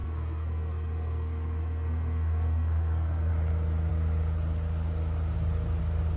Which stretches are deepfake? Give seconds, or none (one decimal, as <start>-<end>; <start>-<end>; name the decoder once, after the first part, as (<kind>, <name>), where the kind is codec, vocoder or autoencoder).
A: 0.0-3.3 (codec, SNAC)